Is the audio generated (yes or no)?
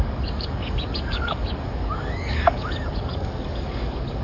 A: yes